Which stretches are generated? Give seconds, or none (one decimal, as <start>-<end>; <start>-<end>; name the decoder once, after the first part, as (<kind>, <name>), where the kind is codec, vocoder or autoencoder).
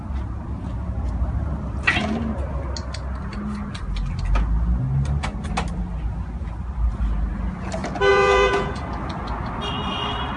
8.1-8.7 (vocoder, Vocos)